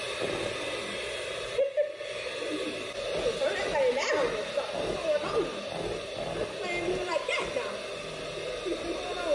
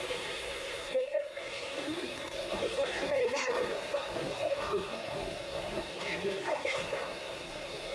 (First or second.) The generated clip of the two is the second